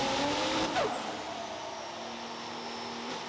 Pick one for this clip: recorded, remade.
recorded